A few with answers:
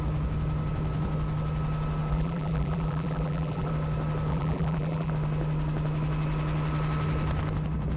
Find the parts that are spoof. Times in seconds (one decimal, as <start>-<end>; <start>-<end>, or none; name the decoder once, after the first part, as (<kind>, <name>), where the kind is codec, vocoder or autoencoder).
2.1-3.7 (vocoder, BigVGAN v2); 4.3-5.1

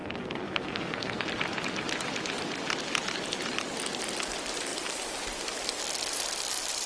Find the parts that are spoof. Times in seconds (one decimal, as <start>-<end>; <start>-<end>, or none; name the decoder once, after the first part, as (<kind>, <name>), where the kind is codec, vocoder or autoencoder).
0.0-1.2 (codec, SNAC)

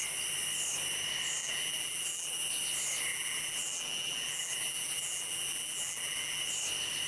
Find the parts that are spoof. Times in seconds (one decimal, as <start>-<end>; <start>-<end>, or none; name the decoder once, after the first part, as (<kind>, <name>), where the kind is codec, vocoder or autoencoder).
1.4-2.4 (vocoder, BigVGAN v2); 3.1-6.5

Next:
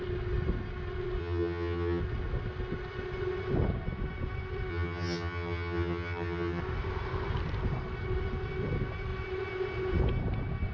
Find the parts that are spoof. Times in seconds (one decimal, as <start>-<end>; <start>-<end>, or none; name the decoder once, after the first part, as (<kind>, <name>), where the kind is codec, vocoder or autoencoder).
1.2-2.0 (vocoder, HiFi-GAN); 4.7-6.6

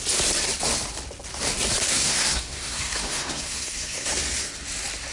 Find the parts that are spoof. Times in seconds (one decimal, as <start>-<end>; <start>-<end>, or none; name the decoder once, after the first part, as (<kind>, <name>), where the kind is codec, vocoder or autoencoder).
1.9-4.1 (codec, SNAC)

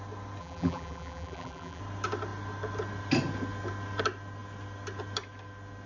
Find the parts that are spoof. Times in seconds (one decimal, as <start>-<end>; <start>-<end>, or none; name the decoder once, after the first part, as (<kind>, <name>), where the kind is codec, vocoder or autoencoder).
0.4-1.8 (vocoder, BigVGAN v2)

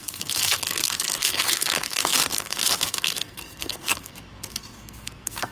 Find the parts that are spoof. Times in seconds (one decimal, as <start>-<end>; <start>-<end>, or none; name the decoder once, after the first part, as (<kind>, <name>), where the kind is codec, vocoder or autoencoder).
0.0-5.5 (codec, SNAC)